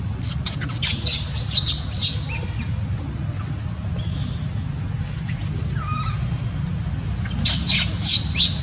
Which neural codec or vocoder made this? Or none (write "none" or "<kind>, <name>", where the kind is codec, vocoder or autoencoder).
none